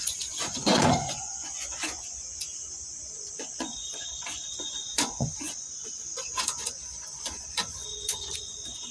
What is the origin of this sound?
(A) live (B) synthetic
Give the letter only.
B